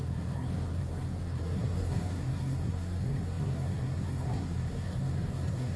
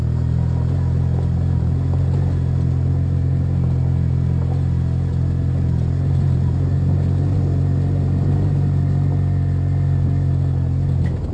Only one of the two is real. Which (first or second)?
second